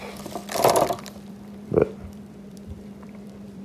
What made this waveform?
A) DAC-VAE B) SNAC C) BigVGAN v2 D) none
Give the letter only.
C